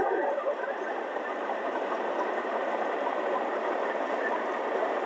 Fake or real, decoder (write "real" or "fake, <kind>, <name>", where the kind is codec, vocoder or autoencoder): fake, vocoder, BigVGAN v2